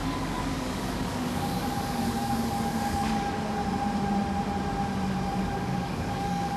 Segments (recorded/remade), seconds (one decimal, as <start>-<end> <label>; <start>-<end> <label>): 0.0-3.6 remade; 3.6-5.4 recorded; 5.4-6.6 remade